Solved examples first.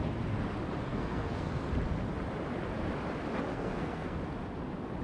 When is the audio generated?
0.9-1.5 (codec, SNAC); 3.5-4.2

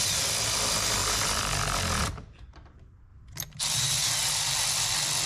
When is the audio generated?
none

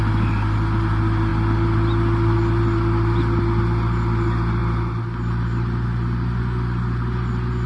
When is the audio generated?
none